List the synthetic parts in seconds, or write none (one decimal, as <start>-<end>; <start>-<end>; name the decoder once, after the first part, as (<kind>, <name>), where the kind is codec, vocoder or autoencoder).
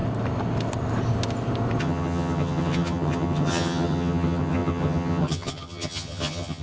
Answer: 1.8-6.6 (vocoder, HiFi-GAN)